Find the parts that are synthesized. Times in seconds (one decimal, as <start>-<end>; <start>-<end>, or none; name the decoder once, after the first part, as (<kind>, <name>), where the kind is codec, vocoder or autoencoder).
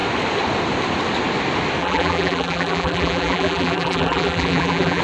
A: 1.8-5.0 (vocoder, BigVGAN v2)